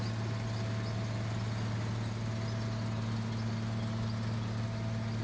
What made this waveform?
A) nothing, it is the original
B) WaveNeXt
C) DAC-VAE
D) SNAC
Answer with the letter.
A